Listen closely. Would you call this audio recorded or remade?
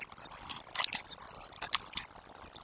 recorded